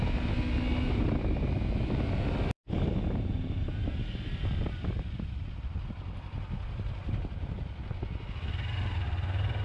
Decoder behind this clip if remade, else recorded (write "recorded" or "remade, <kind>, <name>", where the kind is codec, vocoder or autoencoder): recorded